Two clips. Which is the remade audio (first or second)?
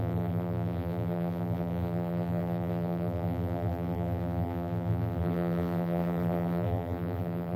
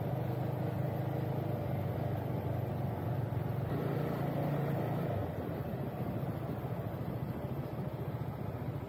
first